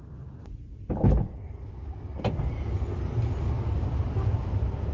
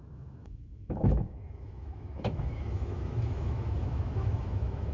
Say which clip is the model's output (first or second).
second